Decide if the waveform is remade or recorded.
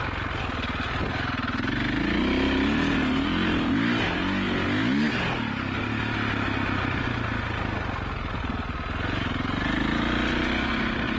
recorded